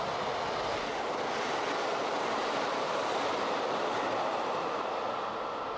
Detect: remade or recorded recorded